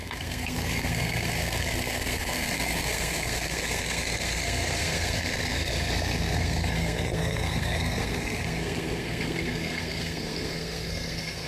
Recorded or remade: remade